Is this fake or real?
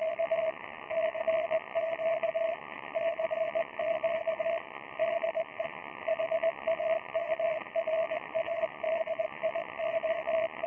fake